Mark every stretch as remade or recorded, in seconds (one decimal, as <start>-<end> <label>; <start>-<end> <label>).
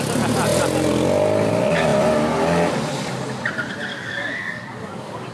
0.0-3.9 recorded; 3.9-5.3 remade